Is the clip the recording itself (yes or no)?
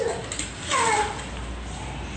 yes